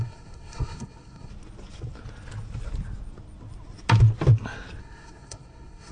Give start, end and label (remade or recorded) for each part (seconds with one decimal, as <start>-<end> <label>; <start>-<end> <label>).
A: 0.0-1.3 remade; 1.3-4.8 recorded; 4.8-5.9 remade